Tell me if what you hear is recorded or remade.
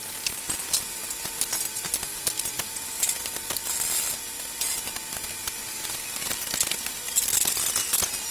recorded